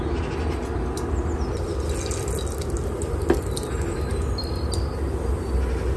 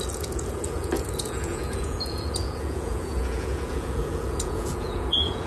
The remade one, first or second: second